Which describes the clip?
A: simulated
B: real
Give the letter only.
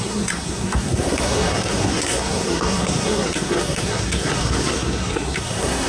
A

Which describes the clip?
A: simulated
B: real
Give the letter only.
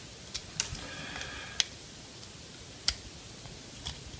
B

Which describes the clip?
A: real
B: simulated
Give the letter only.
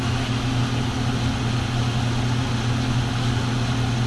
A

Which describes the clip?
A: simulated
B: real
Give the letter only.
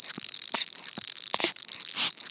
B